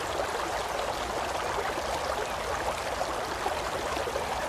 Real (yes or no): yes